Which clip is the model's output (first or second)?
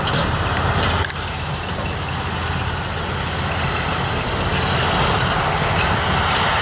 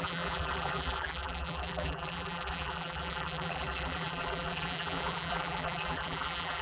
second